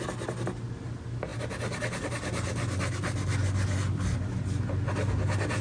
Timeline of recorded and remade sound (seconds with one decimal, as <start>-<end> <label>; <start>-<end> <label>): 0.0-5.6 recorded